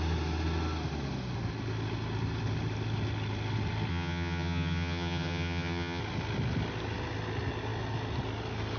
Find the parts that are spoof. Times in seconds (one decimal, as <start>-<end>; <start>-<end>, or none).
3.9-6.0